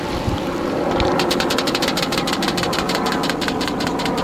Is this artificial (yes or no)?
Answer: yes